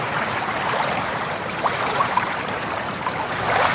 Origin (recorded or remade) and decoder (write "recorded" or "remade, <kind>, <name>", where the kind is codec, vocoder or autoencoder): remade, vocoder, BigVGAN v2